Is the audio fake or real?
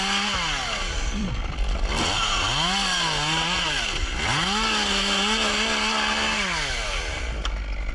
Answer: real